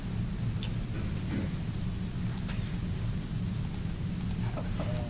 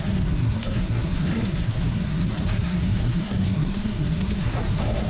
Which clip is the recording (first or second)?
first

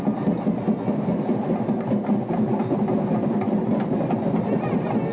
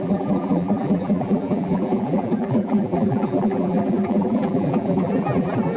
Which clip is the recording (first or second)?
first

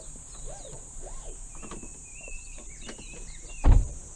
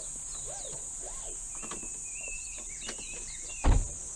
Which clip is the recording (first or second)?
second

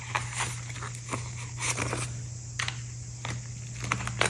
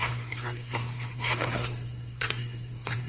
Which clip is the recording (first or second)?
first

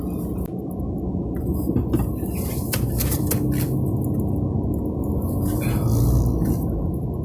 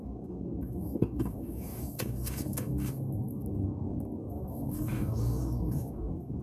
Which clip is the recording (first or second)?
first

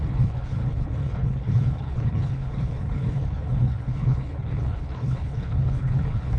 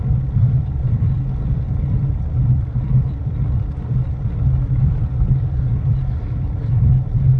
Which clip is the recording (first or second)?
second